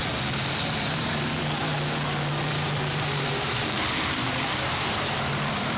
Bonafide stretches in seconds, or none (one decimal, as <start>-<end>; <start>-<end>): 0.0-0.8; 1.7-2.5